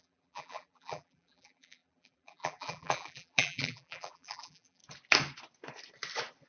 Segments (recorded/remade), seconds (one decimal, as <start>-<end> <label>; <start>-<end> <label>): 0.0-4.8 remade; 4.8-6.5 recorded